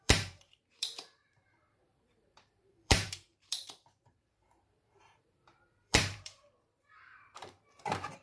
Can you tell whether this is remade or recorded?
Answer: remade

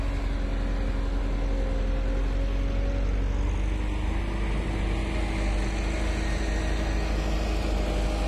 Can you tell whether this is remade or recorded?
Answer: recorded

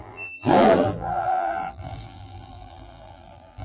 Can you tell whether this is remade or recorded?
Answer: remade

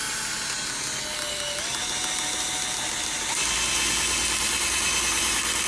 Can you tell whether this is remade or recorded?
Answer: recorded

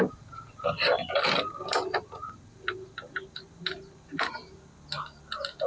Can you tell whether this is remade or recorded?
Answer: recorded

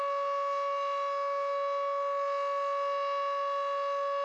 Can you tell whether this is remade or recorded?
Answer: recorded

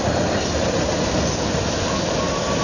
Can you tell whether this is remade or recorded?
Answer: recorded